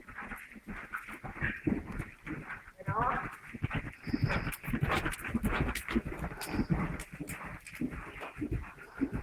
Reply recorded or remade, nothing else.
recorded